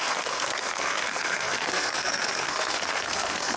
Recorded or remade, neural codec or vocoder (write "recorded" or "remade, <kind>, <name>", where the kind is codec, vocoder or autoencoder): remade, codec, SNAC